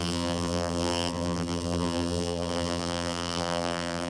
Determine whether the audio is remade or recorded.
remade